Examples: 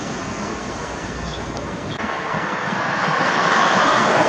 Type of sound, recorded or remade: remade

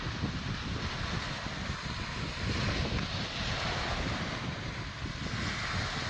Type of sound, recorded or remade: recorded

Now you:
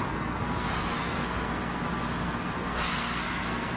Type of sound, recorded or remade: remade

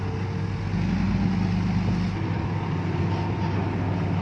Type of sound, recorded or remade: recorded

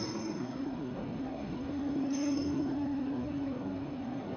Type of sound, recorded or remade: remade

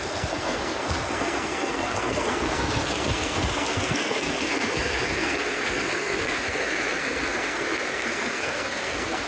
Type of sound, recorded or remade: remade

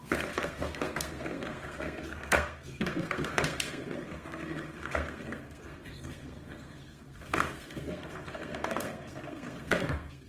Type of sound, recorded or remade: remade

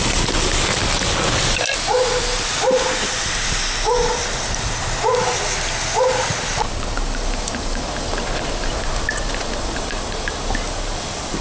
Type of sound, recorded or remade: recorded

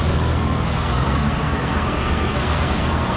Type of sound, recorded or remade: remade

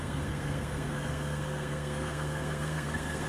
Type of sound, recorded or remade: remade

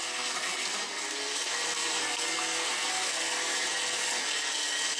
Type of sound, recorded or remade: remade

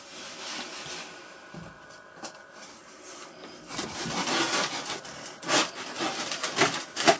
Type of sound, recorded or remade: recorded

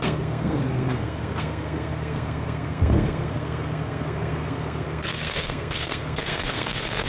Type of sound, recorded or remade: remade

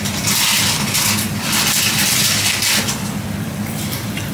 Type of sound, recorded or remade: recorded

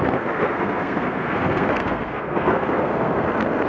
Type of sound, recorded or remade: remade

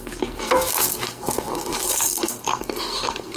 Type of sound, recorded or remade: remade